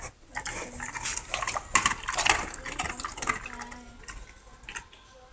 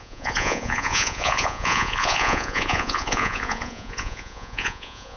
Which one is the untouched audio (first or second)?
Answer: first